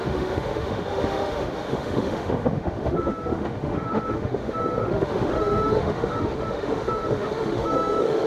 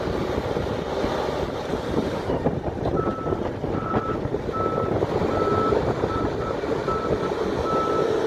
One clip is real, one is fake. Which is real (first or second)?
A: second